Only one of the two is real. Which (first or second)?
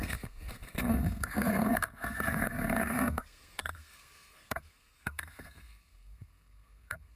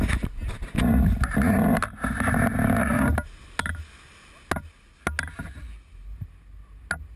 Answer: second